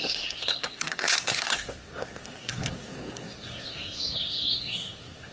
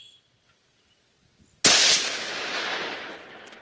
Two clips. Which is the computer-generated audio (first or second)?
first